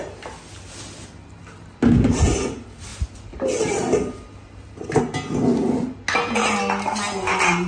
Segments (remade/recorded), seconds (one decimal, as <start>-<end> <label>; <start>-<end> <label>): 0.0-7.7 recorded